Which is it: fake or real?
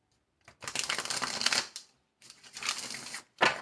real